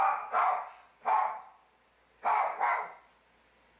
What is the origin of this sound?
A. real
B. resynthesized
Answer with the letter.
A